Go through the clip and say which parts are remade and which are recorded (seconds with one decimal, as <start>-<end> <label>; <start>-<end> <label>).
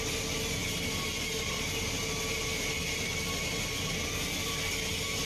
0.0-5.3 recorded